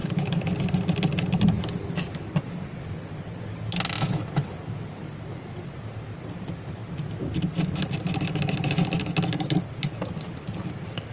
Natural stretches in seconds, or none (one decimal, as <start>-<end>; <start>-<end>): 0.0-11.1